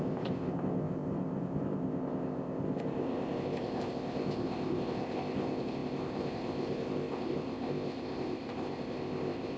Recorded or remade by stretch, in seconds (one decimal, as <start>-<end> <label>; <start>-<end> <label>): 0.0-9.6 remade